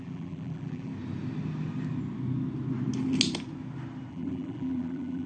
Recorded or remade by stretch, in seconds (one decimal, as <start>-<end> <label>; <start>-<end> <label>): 0.0-0.9 remade; 0.9-4.1 recorded; 4.1-5.3 remade